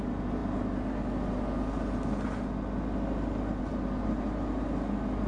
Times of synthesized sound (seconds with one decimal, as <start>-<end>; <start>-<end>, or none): none